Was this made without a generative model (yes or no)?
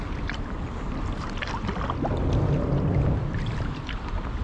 yes